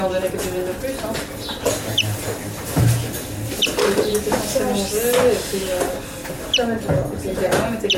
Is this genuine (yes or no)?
yes